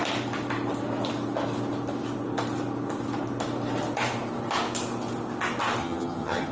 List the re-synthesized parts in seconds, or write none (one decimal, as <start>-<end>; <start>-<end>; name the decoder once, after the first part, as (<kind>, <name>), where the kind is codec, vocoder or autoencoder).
5.8-6.5 (vocoder, HiFi-GAN)